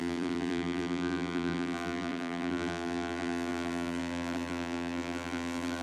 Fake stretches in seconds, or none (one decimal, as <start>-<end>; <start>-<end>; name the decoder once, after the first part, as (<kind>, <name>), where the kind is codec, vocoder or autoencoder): 0.0-5.8 (vocoder, BigVGAN v2)